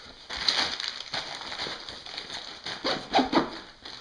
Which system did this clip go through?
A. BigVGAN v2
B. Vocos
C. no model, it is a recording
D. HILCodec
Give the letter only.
C